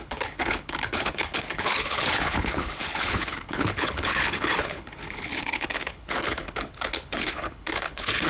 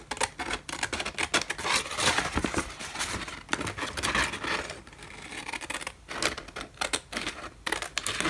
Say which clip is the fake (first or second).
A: first